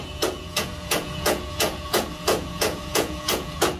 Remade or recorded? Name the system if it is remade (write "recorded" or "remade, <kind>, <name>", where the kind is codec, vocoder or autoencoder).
remade, vocoder, Vocos